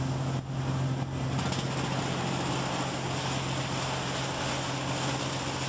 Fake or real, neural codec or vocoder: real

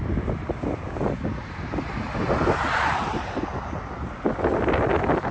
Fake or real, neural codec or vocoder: real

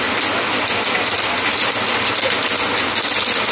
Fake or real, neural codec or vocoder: real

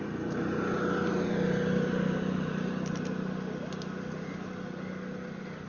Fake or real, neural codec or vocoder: real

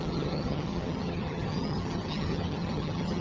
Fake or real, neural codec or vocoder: fake, vocoder, HiFi-GAN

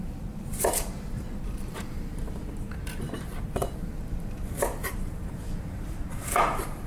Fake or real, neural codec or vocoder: fake, vocoder, BigVGAN v2